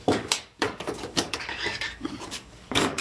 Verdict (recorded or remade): remade